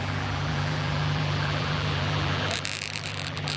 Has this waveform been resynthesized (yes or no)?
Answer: yes